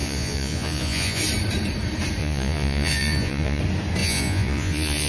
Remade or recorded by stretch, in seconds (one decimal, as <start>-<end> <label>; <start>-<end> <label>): 0.0-1.2 remade; 1.2-2.2 recorded; 2.2-3.6 remade; 3.6-4.0 recorded; 4.0-5.1 remade